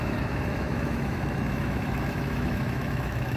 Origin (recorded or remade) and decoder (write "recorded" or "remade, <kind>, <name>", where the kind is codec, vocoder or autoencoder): remade, autoencoder, DAC-VAE